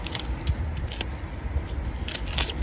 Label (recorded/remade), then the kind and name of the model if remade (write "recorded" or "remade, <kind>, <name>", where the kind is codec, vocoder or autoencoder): recorded